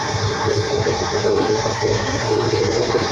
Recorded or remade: remade